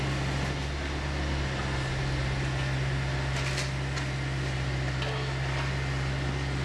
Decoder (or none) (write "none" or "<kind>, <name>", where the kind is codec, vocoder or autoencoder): none